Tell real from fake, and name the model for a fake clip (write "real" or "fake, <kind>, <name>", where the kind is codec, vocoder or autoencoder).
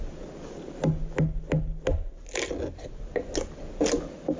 real